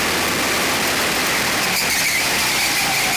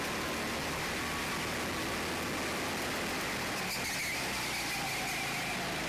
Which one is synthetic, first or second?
first